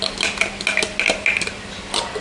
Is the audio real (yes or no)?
yes